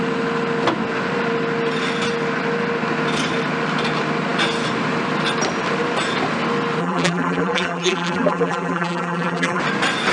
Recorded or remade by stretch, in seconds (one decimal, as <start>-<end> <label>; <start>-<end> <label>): 0.0-6.8 recorded; 6.8-9.6 remade; 9.6-10.1 recorded